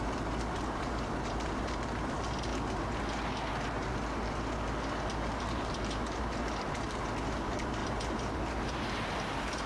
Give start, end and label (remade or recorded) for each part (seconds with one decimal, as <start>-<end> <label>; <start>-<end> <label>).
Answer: 0.0-2.5 remade; 2.5-5.4 recorded; 5.4-9.7 remade